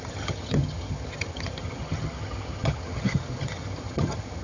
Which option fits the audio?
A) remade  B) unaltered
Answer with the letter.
A